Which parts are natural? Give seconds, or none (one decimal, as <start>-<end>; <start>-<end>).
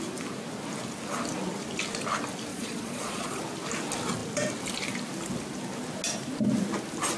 0.0-2.5; 3.4-7.2